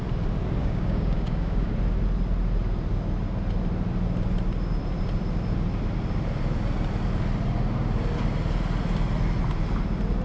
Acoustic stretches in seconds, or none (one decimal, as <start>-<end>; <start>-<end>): 0.0-0.6; 1.7-10.2